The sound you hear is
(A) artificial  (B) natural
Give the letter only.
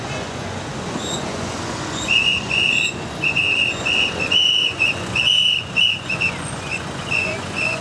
A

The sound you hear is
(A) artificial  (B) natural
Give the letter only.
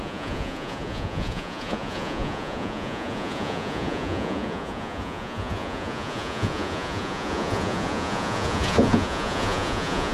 A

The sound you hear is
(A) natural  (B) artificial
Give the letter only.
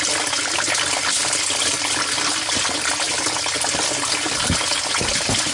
A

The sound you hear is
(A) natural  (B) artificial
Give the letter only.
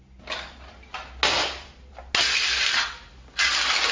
A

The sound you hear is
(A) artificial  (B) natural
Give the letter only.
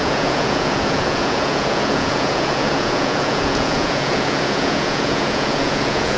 A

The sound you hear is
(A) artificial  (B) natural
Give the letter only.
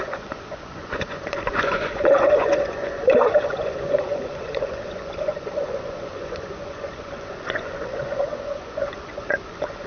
A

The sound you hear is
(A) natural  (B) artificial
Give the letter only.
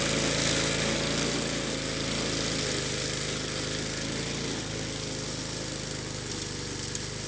A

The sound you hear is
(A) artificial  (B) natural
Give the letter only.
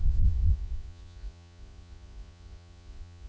A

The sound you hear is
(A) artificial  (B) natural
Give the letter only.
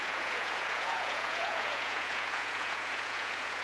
A